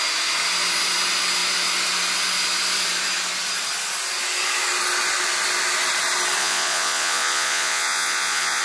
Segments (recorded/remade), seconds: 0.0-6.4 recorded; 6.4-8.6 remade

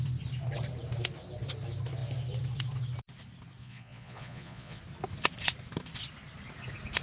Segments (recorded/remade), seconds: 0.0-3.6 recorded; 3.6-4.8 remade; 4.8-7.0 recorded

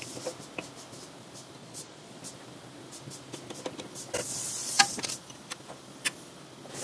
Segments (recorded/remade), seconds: 0.0-1.6 recorded; 1.6-2.2 remade; 2.2-4.3 recorded; 4.3-4.8 remade; 4.8-6.8 recorded

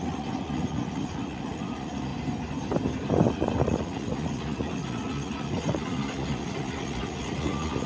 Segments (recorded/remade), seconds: 0.0-2.1 remade; 2.1-3.3 recorded; 3.3-7.9 remade